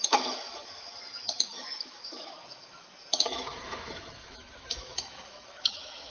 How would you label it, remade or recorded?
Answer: remade